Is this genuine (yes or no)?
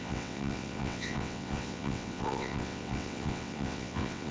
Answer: no